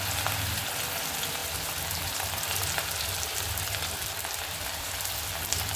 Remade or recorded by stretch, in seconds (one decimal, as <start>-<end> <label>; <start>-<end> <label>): 0.0-1.4 recorded; 1.4-4.9 remade; 4.9-5.8 recorded